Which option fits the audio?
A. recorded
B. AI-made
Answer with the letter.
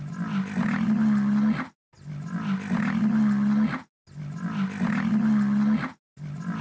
A